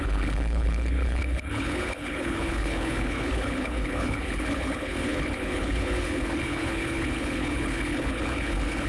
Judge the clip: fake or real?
fake